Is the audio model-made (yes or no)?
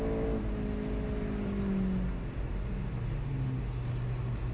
no